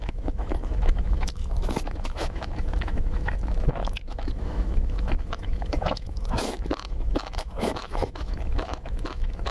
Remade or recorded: remade